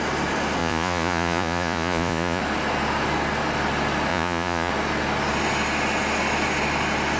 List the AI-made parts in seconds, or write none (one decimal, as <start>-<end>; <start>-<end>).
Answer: 0.6-2.4; 4.1-4.7